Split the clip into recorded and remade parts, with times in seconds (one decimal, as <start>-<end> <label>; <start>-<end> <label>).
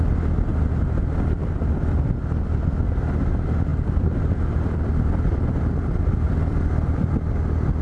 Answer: 0.0-0.5 recorded; 0.5-1.6 remade; 1.6-3.7 recorded; 3.7-7.3 remade; 7.3-7.8 recorded